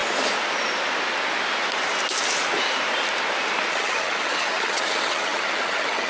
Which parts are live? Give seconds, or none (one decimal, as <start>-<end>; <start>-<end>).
0.0-3.7

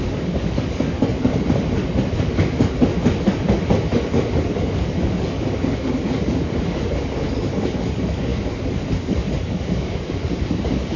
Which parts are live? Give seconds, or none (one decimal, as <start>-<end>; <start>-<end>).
1.3-2.2; 2.9-4.3

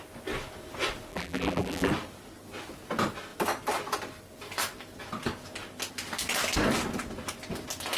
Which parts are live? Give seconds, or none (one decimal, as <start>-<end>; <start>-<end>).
0.0-1.1; 1.9-8.0